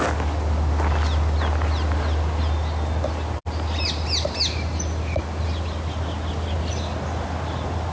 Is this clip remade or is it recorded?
recorded